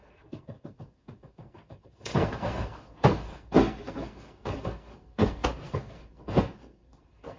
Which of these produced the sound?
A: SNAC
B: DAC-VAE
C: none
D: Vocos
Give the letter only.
A